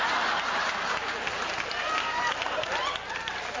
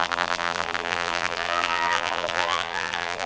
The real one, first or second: first